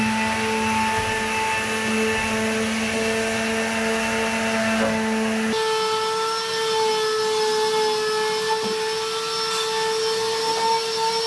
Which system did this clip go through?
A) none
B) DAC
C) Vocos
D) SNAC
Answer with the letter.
A